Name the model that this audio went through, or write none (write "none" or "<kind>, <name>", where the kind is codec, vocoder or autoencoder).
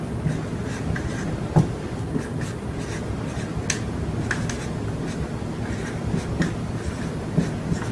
none